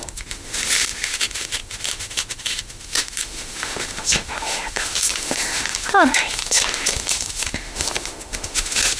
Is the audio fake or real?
fake